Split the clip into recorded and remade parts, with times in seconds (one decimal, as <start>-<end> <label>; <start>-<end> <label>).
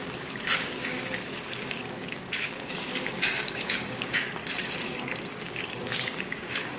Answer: 0.0-4.4 remade; 4.4-5.4 recorded; 5.4-6.8 remade